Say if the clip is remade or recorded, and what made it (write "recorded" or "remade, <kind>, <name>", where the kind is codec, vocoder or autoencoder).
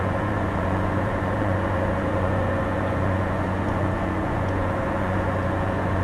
remade, vocoder, Vocos